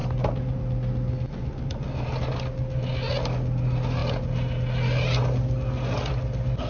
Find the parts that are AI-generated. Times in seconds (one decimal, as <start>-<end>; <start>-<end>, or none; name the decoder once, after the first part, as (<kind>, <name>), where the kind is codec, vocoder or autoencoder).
0.0-0.6 (vocoder, BigVGAN v2)